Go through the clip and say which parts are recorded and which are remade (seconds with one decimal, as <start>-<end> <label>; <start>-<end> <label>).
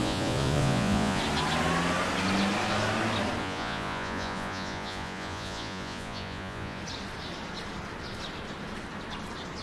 0.0-1.2 remade; 1.2-3.4 recorded; 3.4-6.8 remade; 6.8-9.6 recorded